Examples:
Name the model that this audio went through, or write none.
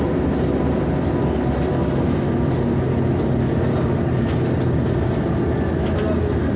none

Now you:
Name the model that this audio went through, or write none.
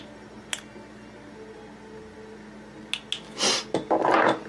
none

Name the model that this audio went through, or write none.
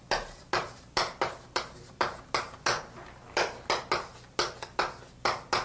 none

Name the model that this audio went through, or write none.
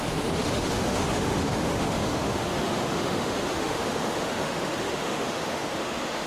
autoencoder, DAC-VAE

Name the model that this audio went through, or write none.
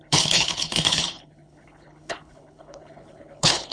codec, HILCodec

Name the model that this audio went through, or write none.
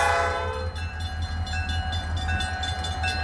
none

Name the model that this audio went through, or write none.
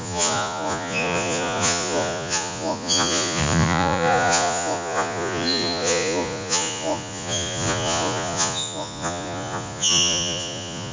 vocoder, Vocos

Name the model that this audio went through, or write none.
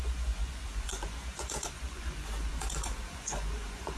vocoder, Vocos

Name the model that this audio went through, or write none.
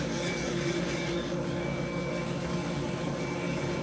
codec, DAC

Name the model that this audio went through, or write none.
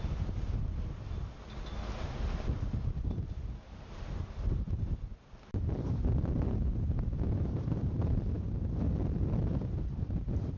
none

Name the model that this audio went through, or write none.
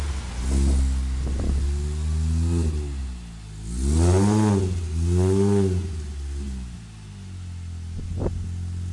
none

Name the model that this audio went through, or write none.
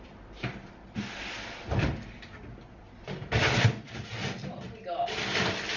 vocoder, BigVGAN v2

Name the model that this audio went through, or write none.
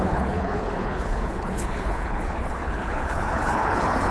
codec, HILCodec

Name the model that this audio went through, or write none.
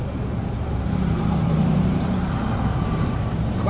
vocoder, BigVGAN v2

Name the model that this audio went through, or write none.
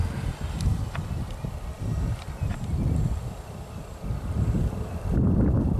none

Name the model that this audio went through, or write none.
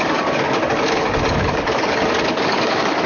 codec, DAC